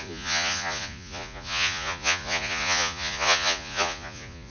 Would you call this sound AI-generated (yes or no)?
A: yes